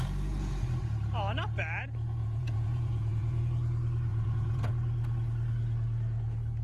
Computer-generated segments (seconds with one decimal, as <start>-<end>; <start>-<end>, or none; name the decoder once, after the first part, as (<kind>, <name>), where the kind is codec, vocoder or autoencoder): 2.2-3.4 (vocoder, Vocos); 4.1-4.7